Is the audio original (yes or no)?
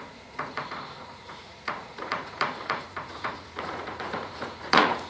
no